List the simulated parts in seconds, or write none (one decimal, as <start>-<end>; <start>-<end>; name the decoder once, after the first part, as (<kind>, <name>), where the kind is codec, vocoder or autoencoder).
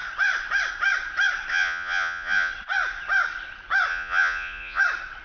1.5-2.5 (vocoder, Vocos); 3.9-4.8